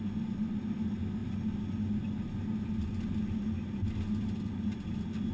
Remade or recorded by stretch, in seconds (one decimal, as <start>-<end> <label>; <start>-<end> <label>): 0.0-5.3 recorded